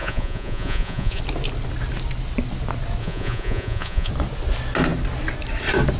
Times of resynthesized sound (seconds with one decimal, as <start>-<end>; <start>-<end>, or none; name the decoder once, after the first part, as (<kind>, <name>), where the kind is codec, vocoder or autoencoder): 0.0-1.2 (vocoder, Vocos); 3.0-4.1